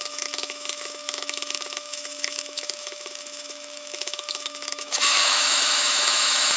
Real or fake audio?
fake